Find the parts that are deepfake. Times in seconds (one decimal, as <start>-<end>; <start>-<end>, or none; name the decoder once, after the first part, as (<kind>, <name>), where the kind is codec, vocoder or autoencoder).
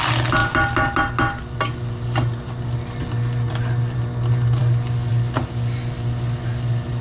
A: none